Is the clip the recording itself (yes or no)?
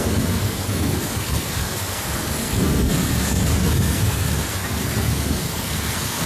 no